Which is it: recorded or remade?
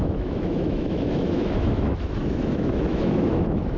remade